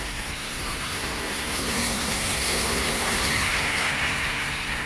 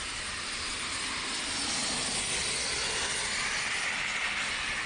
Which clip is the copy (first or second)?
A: first